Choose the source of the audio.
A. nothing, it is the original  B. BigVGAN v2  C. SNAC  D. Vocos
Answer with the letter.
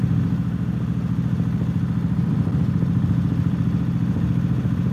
A